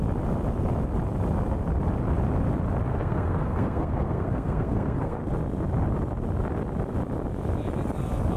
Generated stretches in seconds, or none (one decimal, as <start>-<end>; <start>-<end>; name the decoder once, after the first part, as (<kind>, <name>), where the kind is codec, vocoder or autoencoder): 2.9-5.2 (codec, SNAC)

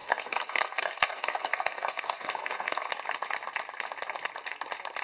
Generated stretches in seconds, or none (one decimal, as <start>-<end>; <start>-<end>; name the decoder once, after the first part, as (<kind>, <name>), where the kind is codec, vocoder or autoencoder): 0.0-2.9 (codec, SNAC)

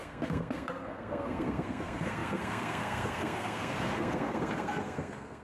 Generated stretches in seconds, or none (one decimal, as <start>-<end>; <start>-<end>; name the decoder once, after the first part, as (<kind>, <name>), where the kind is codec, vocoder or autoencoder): 0.0-5.4 (codec, SNAC)

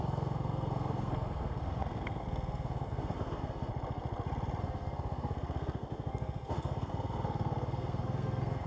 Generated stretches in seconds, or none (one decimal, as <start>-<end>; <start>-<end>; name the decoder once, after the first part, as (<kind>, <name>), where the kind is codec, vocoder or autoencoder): 0.0-3.7 (codec, SNAC); 4.6-8.7

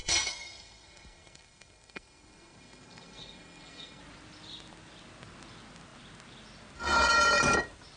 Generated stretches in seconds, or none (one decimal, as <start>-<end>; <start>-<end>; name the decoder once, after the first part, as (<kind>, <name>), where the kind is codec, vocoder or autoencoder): 0.0-4.0 (codec, SNAC)

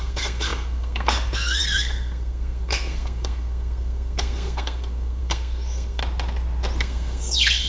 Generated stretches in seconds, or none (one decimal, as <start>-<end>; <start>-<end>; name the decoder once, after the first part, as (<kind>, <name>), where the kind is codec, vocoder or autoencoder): 0.0-6.0 (codec, SNAC); 6.8-7.7